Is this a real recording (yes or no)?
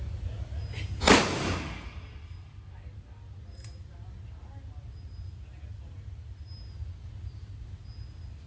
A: yes